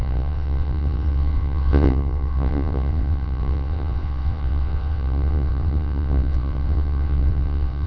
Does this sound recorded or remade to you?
remade